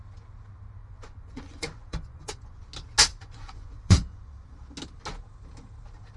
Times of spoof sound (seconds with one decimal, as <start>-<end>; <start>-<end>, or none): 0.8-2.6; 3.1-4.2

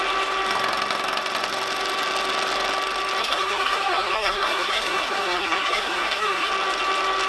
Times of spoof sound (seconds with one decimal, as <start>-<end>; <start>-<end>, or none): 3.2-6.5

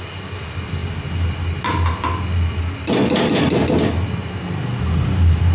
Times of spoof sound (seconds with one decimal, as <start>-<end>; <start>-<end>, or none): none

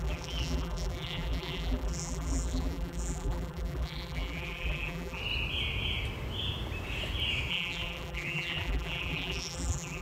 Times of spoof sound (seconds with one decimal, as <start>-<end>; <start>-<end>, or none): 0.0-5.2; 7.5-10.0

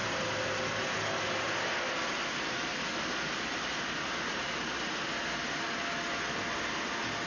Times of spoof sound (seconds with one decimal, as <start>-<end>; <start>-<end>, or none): none

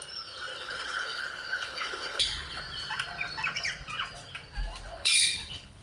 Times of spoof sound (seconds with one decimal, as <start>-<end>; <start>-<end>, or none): 0.5-2.6; 4.9-5.8